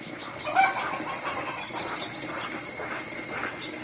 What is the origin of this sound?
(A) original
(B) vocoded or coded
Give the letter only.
A